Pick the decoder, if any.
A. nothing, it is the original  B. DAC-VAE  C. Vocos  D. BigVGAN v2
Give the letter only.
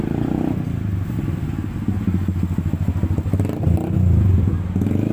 A